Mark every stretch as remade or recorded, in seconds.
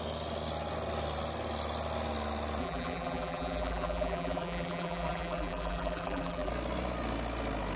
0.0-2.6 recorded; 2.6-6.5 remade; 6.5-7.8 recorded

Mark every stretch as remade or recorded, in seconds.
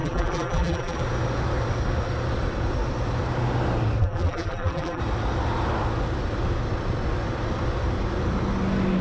0.0-1.0 remade; 1.0-4.0 recorded; 4.0-5.0 remade; 5.0-9.0 recorded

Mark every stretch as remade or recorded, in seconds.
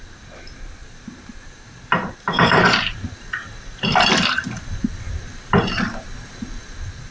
0.0-0.8 recorded; 0.8-3.2 remade; 3.2-7.1 recorded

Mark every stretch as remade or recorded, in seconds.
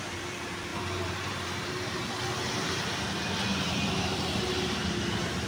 0.0-2.0 remade; 2.0-3.9 recorded; 3.9-5.5 remade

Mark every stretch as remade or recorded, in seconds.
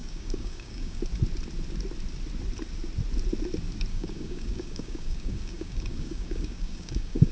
0.0-1.0 remade; 1.0-3.9 recorded; 3.9-7.3 remade